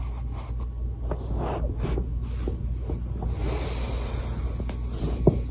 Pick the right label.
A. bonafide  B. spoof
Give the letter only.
A